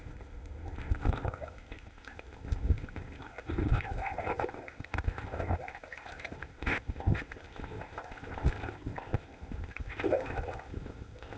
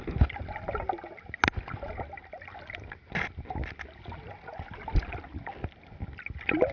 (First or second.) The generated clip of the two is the first